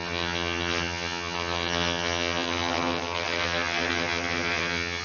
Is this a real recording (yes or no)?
no